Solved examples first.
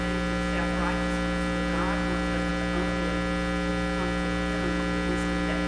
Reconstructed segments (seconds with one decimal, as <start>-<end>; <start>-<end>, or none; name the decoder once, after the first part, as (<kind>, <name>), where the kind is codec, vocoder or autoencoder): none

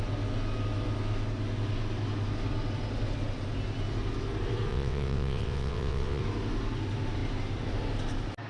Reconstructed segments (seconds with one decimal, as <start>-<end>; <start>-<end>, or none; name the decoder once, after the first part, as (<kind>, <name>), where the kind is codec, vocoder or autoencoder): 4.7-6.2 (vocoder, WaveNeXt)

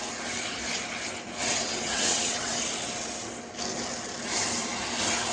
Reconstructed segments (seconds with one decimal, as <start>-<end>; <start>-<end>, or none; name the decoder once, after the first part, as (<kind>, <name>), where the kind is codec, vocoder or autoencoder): 1.4-2.6 (vocoder, WaveNeXt)

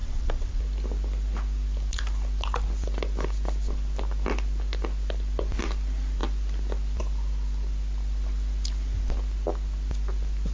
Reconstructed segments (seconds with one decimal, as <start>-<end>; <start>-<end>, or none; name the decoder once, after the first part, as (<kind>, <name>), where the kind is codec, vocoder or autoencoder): 0.0-0.6 (vocoder, WaveNeXt)

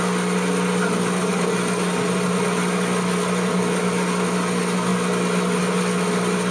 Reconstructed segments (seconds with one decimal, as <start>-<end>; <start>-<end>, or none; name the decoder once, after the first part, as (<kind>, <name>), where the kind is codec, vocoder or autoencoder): none

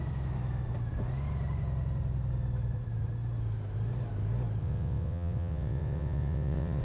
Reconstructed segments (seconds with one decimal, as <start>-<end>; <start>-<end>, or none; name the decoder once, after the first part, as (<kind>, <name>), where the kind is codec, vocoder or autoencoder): 4.6-6.8 (vocoder, WaveNeXt)

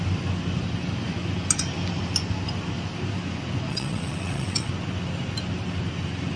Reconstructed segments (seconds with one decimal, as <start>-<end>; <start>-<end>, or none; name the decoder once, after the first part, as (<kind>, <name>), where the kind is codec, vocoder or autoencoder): 3.7-4.7 (vocoder, WaveNeXt)

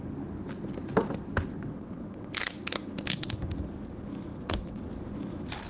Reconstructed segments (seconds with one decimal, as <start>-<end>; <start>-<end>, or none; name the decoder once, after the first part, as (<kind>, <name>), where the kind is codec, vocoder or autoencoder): 1.6-2.3 (vocoder, WaveNeXt); 4.3-4.9